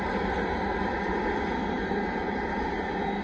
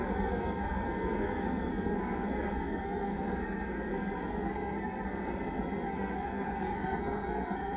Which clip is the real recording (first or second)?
first